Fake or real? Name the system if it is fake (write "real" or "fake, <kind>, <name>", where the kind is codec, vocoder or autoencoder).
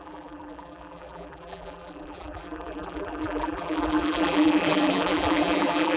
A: fake, vocoder, BigVGAN v2